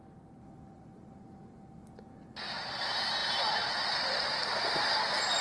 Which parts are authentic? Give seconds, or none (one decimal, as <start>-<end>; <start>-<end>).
0.0-5.4